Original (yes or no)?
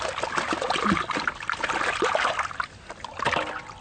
yes